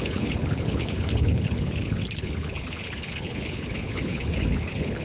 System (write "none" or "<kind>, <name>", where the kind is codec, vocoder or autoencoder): codec, HILCodec